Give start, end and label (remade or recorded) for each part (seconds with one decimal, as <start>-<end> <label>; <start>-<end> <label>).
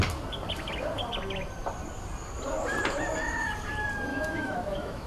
0.0-4.1 recorded; 4.1-5.1 remade